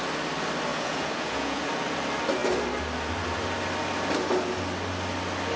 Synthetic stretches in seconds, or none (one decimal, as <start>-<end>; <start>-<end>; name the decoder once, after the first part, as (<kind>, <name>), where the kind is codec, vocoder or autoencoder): 0.7-1.7 (vocoder, Vocos)